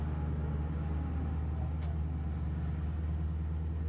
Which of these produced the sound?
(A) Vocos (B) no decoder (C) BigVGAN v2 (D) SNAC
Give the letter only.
B